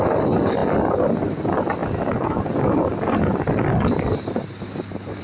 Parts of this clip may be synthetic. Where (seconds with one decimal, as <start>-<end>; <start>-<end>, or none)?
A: none